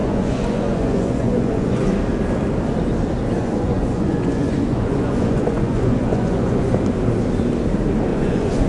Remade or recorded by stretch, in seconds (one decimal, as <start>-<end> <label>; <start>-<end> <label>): 0.0-1.9 remade; 1.9-3.4 recorded; 3.4-6.7 remade; 6.7-8.1 recorded; 8.1-8.7 remade